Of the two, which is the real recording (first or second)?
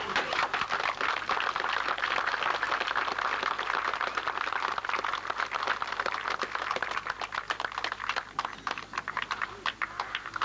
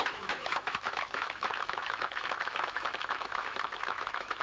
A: first